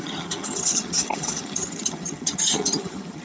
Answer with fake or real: fake